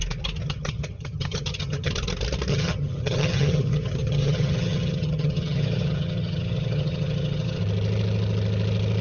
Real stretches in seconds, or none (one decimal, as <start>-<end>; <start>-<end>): 0.0-0.4; 1.9-2.5; 7.6-9.0